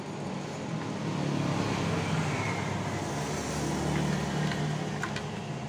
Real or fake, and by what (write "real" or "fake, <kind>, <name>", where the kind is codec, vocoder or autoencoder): real